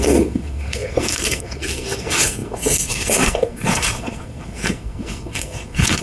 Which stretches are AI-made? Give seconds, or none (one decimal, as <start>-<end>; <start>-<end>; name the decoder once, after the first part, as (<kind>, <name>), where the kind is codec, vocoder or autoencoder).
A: 0.0-6.0 (codec, SNAC)